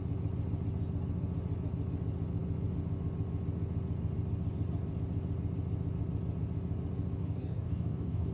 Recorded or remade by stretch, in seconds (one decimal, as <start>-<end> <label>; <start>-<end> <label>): 0.0-7.2 recorded; 7.2-8.3 remade